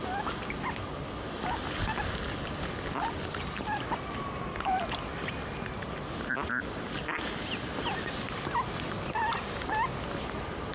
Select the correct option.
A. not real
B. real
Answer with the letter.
B